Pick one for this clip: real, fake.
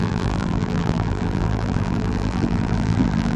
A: fake